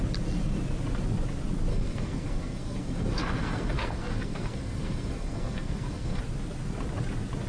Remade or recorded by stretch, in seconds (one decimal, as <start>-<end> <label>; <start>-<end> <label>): 0.0-1.7 recorded; 1.7-6.2 remade; 6.2-7.5 recorded